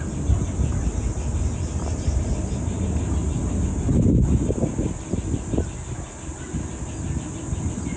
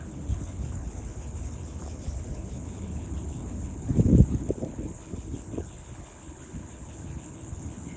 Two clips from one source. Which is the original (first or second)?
first